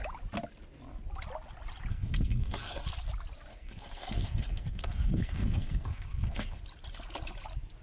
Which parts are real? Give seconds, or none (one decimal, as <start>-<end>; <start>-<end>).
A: 0.0-1.9; 2.8-3.5; 6.6-7.8